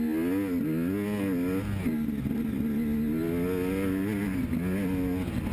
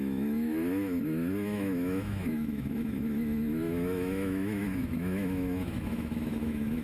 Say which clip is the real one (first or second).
first